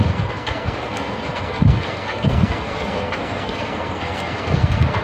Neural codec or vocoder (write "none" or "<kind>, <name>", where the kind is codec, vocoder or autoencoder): codec, SNAC